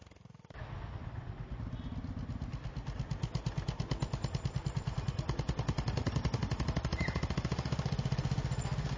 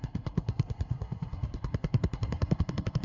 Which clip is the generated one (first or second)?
second